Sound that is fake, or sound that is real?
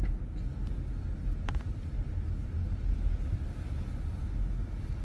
real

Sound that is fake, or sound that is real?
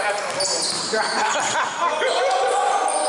real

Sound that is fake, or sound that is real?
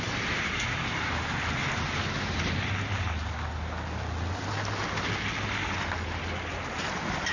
real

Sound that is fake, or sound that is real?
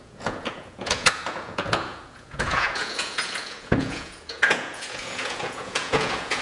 fake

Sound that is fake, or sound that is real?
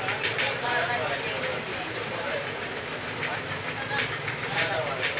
real